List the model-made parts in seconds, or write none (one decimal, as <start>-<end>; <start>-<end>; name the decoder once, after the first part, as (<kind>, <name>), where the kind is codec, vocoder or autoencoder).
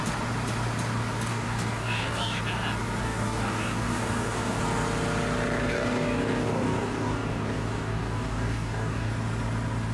1.3-2.4 (codec, DAC); 3.0-4.6; 5.6-9.1